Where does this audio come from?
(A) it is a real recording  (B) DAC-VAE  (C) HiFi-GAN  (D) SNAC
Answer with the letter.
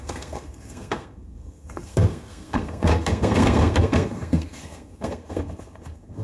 D